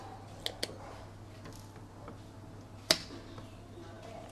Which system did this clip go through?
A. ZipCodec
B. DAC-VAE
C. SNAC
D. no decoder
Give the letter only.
D